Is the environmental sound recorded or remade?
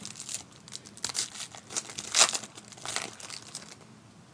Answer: recorded